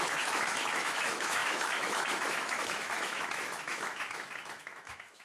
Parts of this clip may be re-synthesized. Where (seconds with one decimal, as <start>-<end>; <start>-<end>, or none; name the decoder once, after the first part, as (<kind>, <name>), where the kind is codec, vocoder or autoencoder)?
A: 0.0-5.2 (autoencoder, DAC-VAE)